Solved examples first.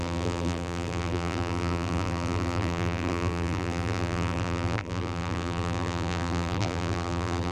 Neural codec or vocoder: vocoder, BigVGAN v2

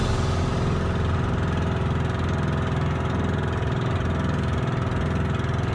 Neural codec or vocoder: none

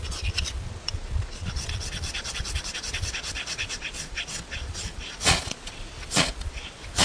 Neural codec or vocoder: vocoder, Vocos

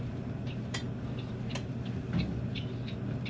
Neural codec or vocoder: none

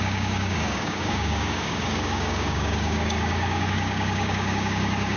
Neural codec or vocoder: codec, DAC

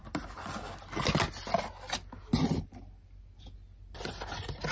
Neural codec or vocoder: none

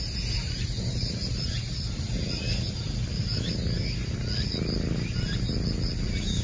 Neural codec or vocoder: none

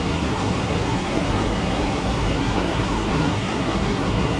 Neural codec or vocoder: codec, SNAC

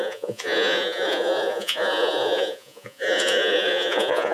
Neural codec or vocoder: vocoder, Vocos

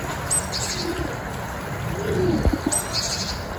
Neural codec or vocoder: none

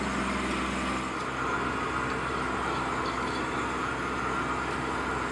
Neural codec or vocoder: none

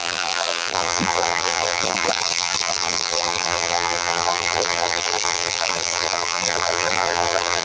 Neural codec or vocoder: vocoder, BigVGAN v2